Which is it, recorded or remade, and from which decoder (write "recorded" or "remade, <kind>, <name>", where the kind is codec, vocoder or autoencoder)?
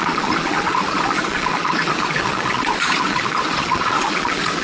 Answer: remade, vocoder, Vocos